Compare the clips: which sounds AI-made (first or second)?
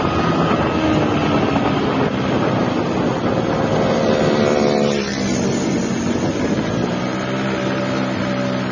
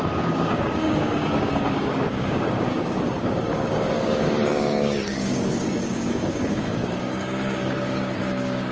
second